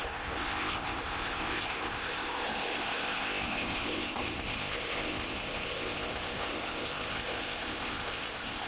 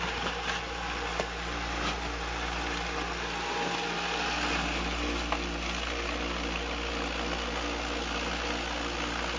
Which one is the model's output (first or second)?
first